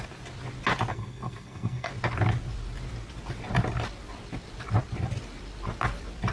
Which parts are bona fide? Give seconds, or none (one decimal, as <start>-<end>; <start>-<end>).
0.0-0.9; 1.9-6.3